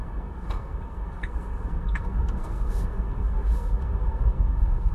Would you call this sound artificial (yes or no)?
yes